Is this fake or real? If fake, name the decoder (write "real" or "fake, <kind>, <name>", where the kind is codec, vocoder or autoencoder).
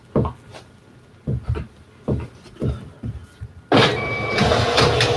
real